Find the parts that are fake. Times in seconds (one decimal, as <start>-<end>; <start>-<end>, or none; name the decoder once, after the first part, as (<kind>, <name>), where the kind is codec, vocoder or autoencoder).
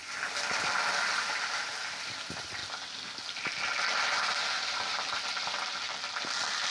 none